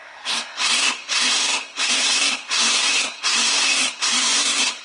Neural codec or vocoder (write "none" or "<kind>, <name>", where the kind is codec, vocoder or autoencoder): codec, SNAC